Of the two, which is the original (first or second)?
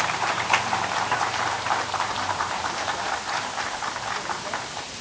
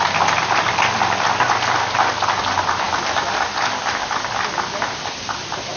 second